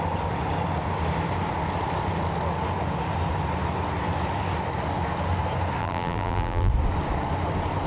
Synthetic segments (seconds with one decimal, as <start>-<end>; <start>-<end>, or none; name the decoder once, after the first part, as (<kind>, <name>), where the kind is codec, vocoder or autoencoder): 5.8-6.7 (vocoder, BigVGAN v2)